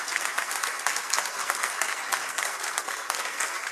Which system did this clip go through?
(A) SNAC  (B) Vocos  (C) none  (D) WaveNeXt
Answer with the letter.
A